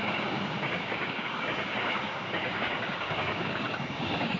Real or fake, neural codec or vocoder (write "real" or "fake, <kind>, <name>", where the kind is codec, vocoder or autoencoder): fake, codec, DAC